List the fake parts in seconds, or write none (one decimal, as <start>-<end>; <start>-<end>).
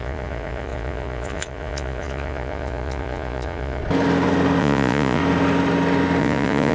0.0-3.8; 4.6-5.2; 6.2-6.7